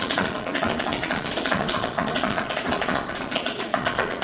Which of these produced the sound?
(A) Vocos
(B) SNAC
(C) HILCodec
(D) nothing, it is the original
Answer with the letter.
A